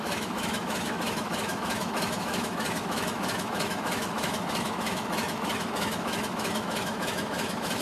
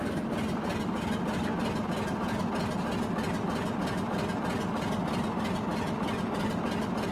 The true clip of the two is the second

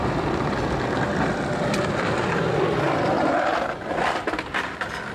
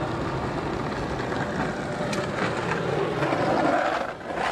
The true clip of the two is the second